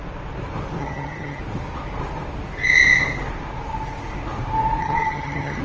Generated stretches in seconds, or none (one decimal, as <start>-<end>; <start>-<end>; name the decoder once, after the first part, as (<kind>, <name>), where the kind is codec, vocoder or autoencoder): 0.8-1.4 (vocoder, HiFi-GAN); 4.8-5.6